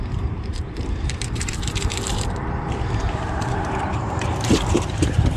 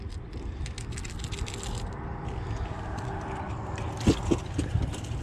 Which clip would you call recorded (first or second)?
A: second